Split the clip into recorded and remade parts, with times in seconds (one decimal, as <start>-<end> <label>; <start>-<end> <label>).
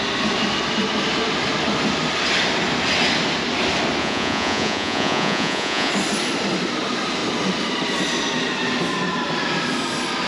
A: 0.0-4.0 recorded; 4.0-5.9 remade; 5.9-10.3 recorded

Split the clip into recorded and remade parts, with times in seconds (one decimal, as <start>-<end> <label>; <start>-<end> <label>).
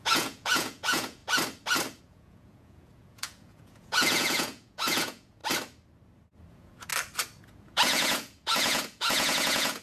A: 0.0-1.2 remade; 1.2-2.0 recorded; 2.0-5.4 remade; 5.4-6.5 recorded; 6.5-6.9 remade; 6.9-7.4 recorded; 7.4-9.8 remade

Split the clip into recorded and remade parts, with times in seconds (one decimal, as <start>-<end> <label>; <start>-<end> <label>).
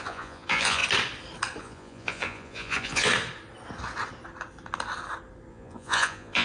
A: 0.0-0.8 remade; 0.8-1.6 recorded; 1.6-3.1 remade; 3.1-5.5 recorded; 5.5-6.4 remade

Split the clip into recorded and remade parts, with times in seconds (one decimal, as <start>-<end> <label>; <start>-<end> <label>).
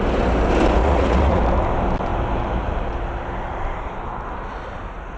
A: 0.0-0.8 recorded; 0.8-1.4 remade; 1.4-5.2 recorded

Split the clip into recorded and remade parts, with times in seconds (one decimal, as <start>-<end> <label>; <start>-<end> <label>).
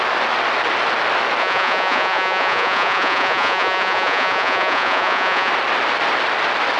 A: 0.0-1.4 recorded; 1.4-5.5 remade; 5.5-6.8 recorded